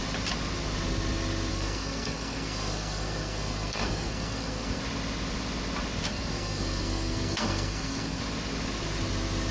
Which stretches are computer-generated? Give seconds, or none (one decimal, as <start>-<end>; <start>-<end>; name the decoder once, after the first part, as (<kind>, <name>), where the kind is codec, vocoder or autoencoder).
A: 1.5-4.8 (codec, SNAC); 6.1-8.2